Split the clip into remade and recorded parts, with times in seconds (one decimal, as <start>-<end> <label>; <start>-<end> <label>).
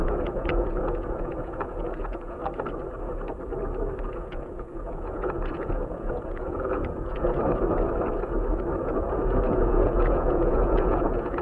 0.0-2.4 remade; 2.4-4.0 recorded; 4.0-7.4 remade; 7.4-8.8 recorded; 8.8-11.4 remade